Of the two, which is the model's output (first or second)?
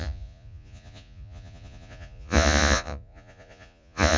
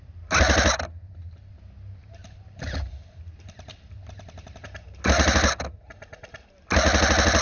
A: first